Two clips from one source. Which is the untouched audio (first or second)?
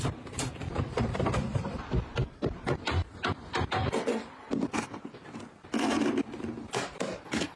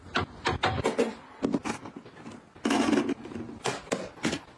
second